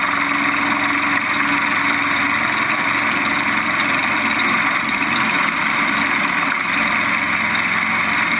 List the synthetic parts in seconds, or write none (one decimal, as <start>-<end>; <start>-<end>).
4.0-6.2